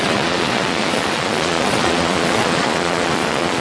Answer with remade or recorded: remade